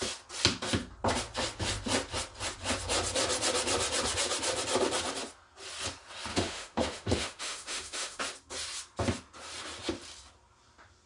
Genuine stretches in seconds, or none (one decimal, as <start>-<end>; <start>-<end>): 0.0-6.3; 8.2-11.1

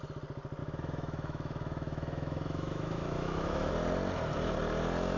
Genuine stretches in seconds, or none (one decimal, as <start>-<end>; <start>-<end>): 0.0-0.6; 3.7-5.2

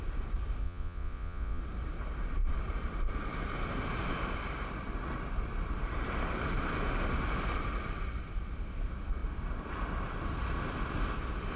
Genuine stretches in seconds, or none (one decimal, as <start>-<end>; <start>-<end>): 0.0-0.6; 1.6-11.6

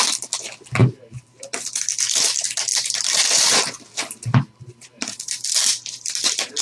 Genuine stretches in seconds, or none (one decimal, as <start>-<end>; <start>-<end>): 0.0-0.8; 1.9-2.7

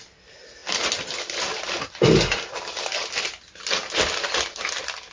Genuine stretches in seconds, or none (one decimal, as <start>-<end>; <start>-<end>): 0.0-5.1

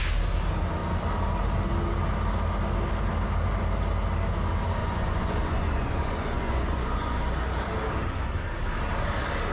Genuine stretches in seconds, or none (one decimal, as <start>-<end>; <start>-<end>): 0.0-4.8; 7.2-9.5